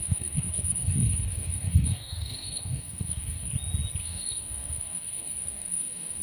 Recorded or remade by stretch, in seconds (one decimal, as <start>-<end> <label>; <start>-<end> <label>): 0.0-3.5 remade; 3.5-4.0 recorded; 4.0-6.2 remade